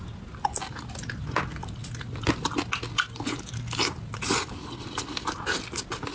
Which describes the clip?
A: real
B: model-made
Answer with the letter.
A